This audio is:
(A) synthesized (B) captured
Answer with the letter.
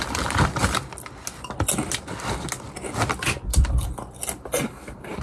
B